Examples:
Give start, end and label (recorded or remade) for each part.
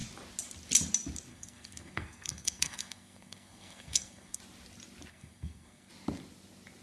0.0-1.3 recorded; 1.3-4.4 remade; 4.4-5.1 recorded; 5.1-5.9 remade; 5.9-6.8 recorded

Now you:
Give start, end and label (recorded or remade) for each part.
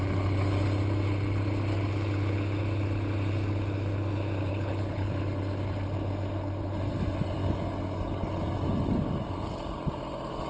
0.0-4.5 recorded; 4.5-5.1 remade; 5.1-10.5 recorded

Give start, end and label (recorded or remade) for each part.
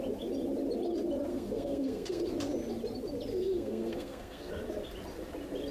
0.0-1.3 recorded; 1.3-2.2 remade; 2.2-3.3 recorded; 3.3-4.5 remade; 4.5-5.7 recorded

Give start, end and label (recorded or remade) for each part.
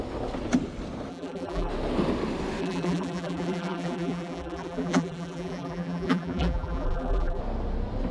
0.0-1.1 recorded; 1.1-1.7 remade; 1.7-2.6 recorded; 2.6-7.4 remade; 7.4-8.1 recorded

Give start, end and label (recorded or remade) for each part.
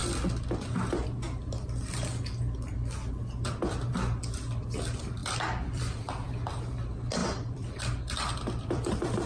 0.0-5.2 recorded; 5.2-6.0 remade; 6.0-7.2 recorded; 7.2-9.3 remade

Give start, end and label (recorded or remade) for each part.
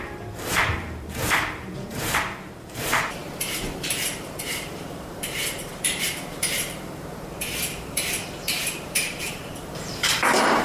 0.0-10.6 remade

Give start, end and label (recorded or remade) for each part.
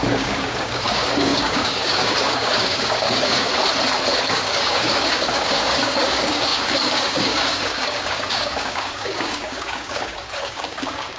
0.0-3.5 remade; 3.5-4.2 recorded; 4.2-11.2 remade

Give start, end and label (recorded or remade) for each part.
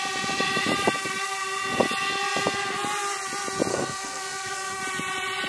0.0-3.7 recorded; 3.7-4.8 remade; 4.8-5.5 recorded